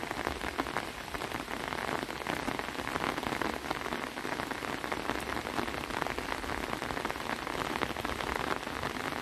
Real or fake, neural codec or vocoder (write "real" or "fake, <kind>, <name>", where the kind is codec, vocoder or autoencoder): real